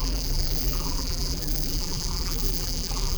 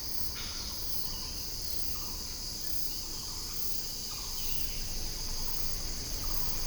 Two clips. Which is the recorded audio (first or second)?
second